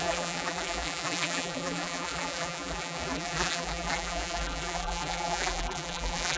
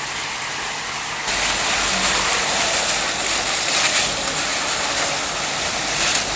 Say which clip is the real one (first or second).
second